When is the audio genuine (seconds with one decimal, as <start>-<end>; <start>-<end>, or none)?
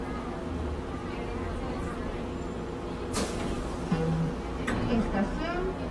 0.0-5.9